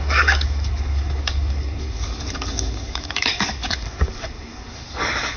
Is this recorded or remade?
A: remade